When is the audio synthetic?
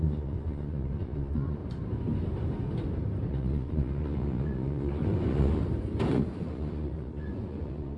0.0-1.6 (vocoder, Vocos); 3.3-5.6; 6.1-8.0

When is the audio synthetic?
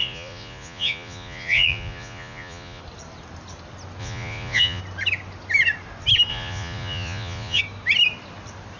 0.0-2.8 (vocoder, Vocos); 4.0-4.8; 6.3-7.6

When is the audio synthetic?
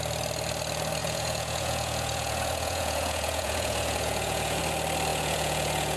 1.0-4.6 (vocoder, Vocos); 5.1-6.0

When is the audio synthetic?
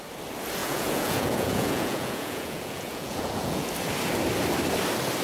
0.6-3.7 (vocoder, Vocos)